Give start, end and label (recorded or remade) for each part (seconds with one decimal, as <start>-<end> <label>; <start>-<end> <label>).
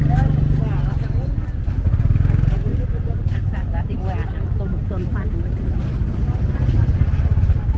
0.0-2.7 recorded; 2.7-4.0 remade; 4.0-7.8 recorded